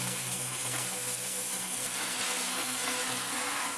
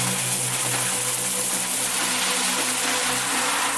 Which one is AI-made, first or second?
first